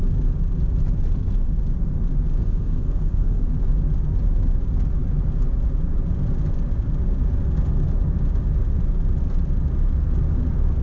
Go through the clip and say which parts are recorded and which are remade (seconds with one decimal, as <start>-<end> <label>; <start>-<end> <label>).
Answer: 0.0-2.4 recorded; 2.4-3.5 remade; 3.5-10.8 recorded